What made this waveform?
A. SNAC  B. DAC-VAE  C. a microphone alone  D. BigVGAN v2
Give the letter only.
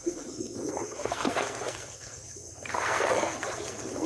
A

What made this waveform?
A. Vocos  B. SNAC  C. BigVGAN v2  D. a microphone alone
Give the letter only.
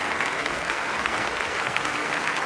B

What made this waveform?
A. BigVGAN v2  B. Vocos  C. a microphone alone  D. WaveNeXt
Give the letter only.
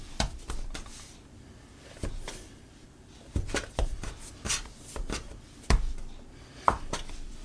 A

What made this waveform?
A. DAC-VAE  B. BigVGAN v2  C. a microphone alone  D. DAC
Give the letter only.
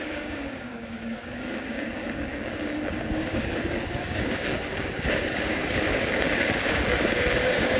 D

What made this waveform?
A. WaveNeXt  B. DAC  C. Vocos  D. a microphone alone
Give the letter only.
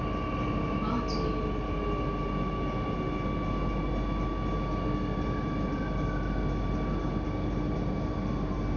D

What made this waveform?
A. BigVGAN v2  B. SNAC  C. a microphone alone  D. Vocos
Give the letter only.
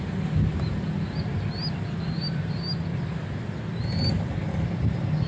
C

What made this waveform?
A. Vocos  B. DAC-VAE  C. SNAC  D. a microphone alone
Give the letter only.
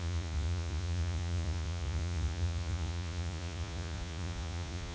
A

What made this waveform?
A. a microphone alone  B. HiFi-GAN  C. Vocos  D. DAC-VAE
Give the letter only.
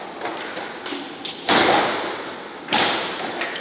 A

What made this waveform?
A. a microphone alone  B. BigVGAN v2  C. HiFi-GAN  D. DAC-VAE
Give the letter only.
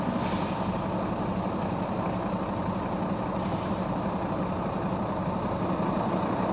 A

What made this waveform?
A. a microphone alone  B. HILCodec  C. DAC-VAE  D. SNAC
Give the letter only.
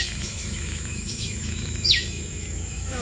C